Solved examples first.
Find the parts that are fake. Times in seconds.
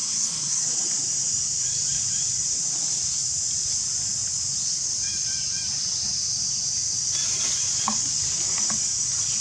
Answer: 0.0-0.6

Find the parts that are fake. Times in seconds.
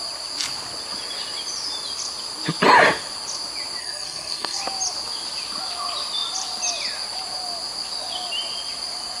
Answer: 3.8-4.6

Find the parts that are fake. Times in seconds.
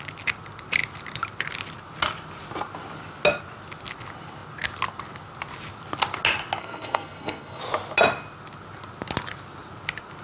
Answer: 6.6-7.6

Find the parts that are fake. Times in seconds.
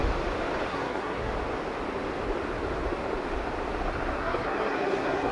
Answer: 0.7-1.3; 4.1-5.3